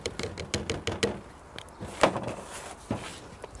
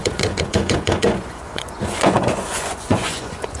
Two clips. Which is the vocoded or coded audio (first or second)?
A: second